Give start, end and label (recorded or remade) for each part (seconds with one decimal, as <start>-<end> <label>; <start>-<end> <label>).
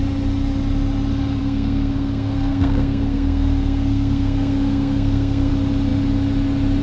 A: 0.0-1.4 recorded; 1.4-5.5 remade; 5.5-6.8 recorded